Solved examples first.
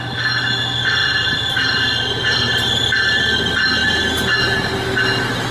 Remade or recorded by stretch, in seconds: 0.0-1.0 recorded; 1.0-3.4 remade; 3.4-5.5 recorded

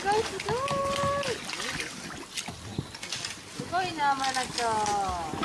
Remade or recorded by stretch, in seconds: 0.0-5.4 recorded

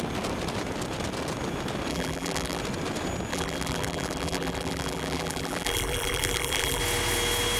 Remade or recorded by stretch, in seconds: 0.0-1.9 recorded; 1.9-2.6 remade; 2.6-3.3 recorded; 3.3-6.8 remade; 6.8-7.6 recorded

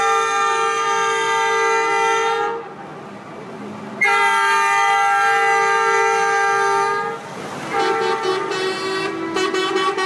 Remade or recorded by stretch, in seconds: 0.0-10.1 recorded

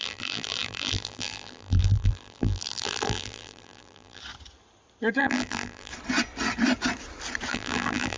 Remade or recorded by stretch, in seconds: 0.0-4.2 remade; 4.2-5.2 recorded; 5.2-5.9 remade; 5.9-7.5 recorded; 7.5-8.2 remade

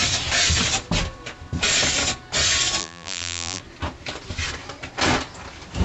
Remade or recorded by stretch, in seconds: 0.0-2.8 recorded; 2.8-3.6 remade; 3.6-5.8 recorded

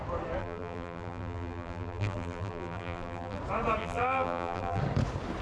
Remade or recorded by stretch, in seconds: 0.0-0.4 recorded; 0.4-3.4 remade; 3.4-3.8 recorded; 3.8-4.8 remade; 4.8-5.4 recorded

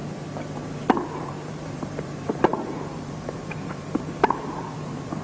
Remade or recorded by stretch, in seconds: 0.0-1.1 recorded; 1.1-5.2 remade